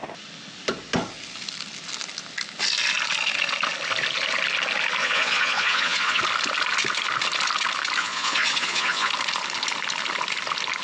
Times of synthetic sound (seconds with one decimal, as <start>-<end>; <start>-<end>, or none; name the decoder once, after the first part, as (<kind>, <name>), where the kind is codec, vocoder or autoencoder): 5.0-6.2 (vocoder, Vocos); 8.0-9.1